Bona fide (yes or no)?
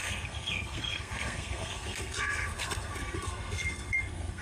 no